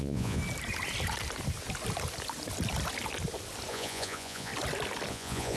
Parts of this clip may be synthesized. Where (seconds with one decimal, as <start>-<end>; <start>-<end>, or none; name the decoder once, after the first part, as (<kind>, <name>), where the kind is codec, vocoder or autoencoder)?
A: 0.0-0.4 (vocoder, Vocos); 3.7-4.5; 5.1-5.6